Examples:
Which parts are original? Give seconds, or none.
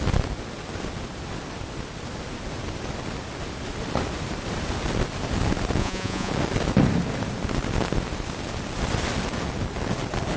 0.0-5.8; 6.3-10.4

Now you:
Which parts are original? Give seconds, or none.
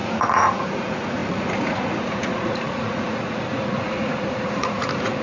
none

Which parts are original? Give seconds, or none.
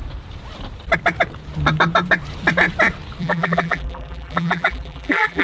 0.0-3.2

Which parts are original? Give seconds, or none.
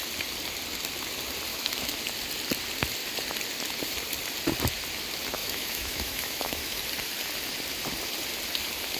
0.0-1.5; 2.0-5.4; 6.8-9.0